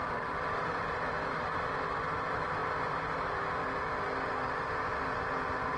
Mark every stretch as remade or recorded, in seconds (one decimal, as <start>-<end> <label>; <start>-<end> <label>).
0.0-0.9 remade; 0.9-2.6 recorded; 2.6-3.4 remade; 3.4-4.9 recorded; 4.9-5.8 remade